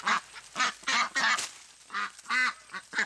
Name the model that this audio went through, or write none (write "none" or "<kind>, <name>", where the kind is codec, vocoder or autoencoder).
none